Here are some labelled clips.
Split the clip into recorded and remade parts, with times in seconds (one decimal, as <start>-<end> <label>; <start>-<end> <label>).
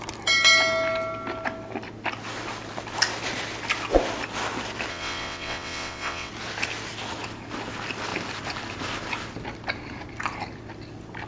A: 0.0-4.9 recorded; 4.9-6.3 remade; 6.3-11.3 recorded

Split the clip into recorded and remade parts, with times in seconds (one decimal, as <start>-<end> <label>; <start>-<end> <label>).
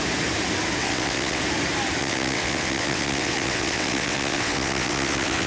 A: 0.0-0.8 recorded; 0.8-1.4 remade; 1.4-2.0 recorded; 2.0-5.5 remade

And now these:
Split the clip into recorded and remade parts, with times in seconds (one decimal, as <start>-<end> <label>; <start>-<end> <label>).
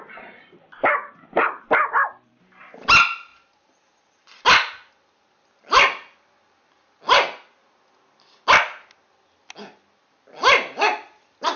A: 0.0-11.6 recorded